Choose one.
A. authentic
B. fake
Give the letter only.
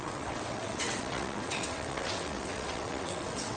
B